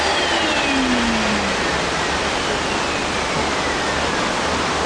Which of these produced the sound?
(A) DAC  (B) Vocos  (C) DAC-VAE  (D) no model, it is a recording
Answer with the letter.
D